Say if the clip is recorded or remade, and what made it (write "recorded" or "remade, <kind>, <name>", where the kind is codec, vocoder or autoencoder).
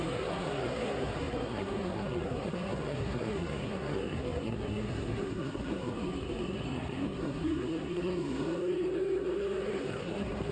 remade, codec, SNAC